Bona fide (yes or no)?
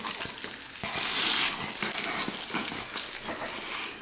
yes